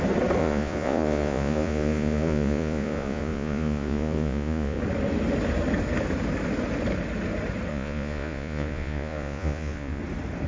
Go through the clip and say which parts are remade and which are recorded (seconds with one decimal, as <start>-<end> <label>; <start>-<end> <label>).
0.0-0.4 recorded; 0.4-4.8 remade; 4.8-7.7 recorded; 7.7-10.0 remade; 10.0-10.5 recorded